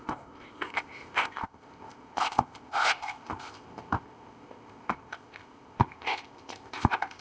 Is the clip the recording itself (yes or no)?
no